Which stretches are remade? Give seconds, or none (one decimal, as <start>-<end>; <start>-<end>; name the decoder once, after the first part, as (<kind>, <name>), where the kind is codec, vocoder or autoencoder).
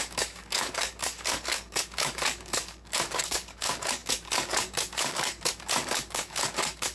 0.0-6.9 (codec, DAC)